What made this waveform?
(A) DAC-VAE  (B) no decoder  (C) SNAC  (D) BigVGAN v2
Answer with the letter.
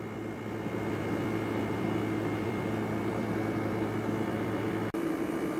D